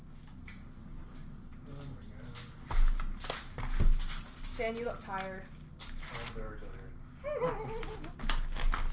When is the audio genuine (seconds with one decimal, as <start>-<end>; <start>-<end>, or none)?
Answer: 0.0-8.9